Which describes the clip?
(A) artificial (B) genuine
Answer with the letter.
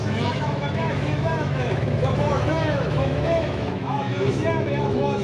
A